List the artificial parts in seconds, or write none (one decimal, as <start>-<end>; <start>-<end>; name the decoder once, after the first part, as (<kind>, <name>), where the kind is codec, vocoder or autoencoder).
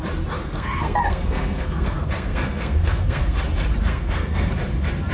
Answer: 0.4-3.4 (codec, SNAC); 3.8-4.5